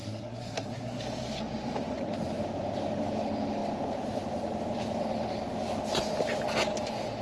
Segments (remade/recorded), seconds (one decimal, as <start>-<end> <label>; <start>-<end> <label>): 0.0-1.0 remade; 1.0-7.2 recorded